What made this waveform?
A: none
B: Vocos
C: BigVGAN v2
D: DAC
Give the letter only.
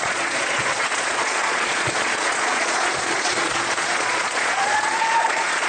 B